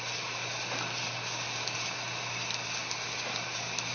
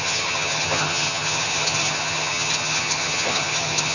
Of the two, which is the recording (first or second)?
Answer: first